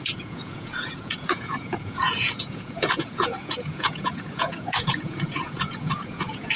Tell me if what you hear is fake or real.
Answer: fake